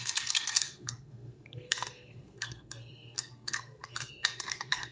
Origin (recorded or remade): remade